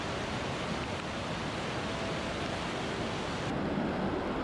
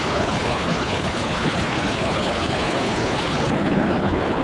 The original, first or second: first